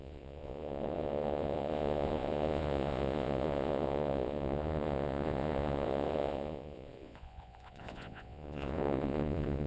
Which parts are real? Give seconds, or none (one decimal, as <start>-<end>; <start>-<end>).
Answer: none